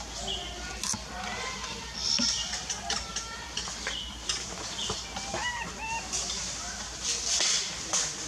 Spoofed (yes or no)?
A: no